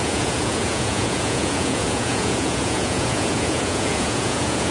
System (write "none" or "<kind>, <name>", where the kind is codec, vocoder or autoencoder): vocoder, Vocos